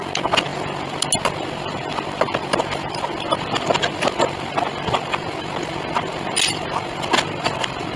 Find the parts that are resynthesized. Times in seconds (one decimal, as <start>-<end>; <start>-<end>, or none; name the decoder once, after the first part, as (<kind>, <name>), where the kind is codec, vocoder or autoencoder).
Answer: none